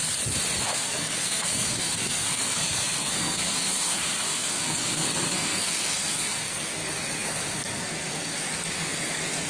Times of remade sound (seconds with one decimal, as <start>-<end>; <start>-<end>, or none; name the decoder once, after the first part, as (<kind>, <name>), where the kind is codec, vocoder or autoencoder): 0.6-9.5 (codec, SNAC)